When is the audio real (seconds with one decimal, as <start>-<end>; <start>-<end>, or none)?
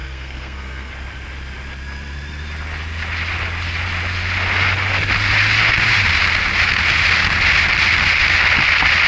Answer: 0.9-9.1